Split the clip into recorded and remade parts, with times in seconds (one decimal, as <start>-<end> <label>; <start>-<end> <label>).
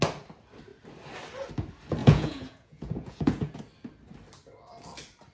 0.0-2.0 recorded; 2.0-3.6 remade; 3.6-5.3 recorded